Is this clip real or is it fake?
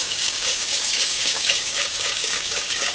fake